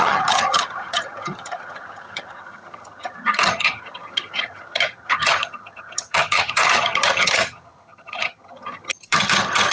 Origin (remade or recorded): remade